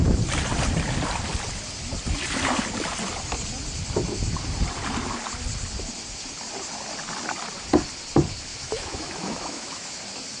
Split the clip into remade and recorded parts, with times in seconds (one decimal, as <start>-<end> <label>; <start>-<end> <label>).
0.0-8.5 recorded; 8.5-10.0 remade; 10.0-10.4 recorded